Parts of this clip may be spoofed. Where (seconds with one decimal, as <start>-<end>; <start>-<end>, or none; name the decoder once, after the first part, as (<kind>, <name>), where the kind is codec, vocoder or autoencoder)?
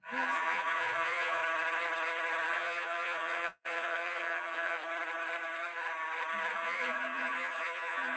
0.0-1.4 (vocoder, Vocos); 2.5-4.8; 6.5-8.2